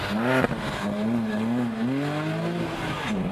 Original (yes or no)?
yes